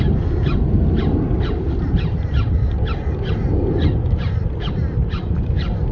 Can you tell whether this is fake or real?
real